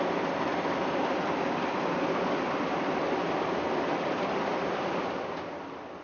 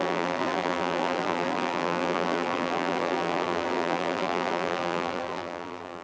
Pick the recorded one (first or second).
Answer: first